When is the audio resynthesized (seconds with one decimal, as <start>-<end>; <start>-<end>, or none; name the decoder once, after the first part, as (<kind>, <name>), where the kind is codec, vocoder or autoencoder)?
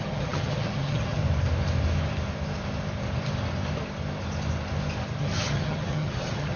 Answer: 0.0-1.2 (vocoder, HiFi-GAN); 5.2-6.6